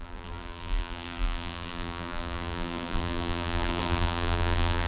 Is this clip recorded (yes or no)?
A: no